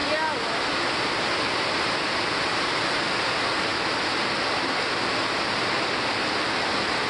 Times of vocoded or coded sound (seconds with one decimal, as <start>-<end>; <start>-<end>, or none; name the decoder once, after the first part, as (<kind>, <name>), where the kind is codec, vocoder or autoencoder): none